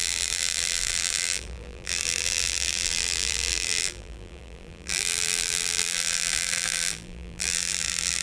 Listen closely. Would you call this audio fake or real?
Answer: fake